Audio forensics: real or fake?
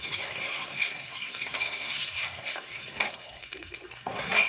fake